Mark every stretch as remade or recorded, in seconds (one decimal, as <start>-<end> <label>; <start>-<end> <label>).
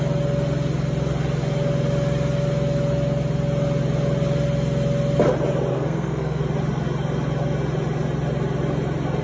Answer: 0.0-5.7 recorded; 5.7-6.4 remade; 6.4-9.2 recorded